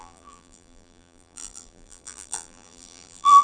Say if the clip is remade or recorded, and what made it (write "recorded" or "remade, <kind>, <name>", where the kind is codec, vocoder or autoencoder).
remade, vocoder, BigVGAN v2